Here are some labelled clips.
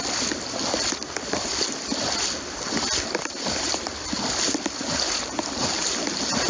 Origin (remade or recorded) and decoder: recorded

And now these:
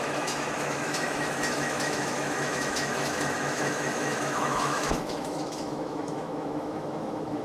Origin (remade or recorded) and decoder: remade, autoencoder, DAC-VAE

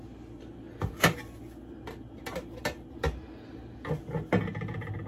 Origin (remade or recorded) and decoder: recorded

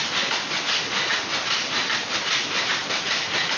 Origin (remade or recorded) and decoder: recorded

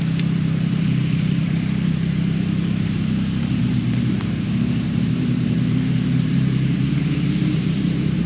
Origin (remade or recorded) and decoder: remade, vocoder, BigVGAN v2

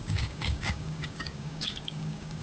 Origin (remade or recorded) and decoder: remade, codec, DAC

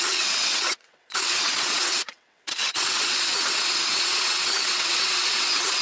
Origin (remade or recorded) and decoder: remade, vocoder, WaveNeXt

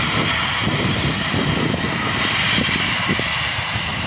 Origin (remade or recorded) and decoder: remade, vocoder, BigVGAN v2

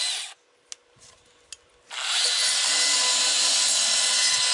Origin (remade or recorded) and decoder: recorded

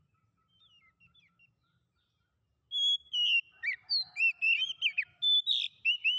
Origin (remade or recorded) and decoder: recorded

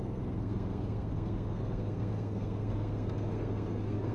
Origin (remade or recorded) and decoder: remade, codec, SNAC